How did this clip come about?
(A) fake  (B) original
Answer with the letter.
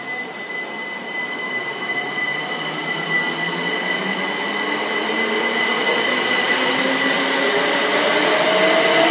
B